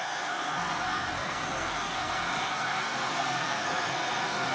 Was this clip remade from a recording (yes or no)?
yes